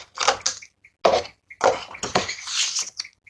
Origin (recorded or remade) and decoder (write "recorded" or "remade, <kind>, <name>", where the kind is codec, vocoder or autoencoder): recorded